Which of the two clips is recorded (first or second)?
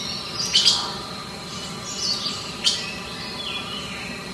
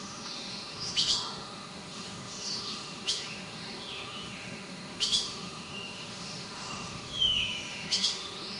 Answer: first